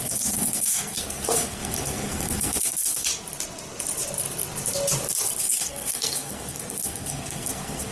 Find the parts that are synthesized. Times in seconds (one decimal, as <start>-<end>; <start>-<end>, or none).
0.0-3.1; 5.4-7.9